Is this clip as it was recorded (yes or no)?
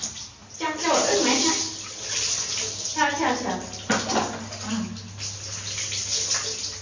yes